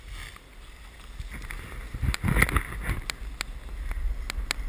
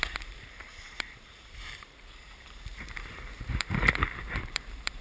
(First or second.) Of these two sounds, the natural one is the first